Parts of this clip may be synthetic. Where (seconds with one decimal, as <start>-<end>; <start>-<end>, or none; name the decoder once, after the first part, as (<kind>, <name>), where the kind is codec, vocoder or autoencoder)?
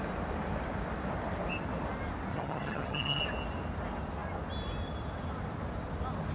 2.3-3.2 (vocoder, HiFi-GAN)